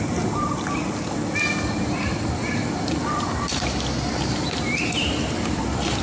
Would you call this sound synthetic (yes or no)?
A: no